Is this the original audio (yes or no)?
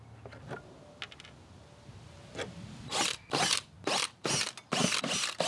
yes